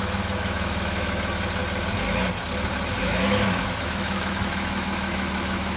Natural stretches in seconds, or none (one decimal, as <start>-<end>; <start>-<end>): 1.6-3.0